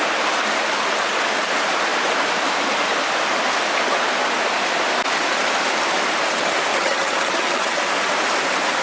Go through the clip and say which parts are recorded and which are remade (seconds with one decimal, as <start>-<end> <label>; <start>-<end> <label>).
0.0-6.7 recorded; 6.7-7.8 remade; 7.8-8.8 recorded